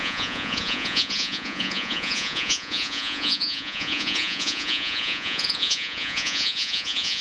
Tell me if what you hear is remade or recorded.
remade